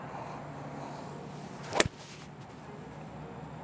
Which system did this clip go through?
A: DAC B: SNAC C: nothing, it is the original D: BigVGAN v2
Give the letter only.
C